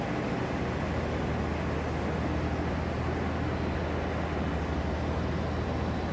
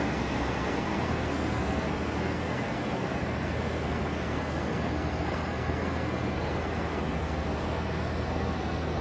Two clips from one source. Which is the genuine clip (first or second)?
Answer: first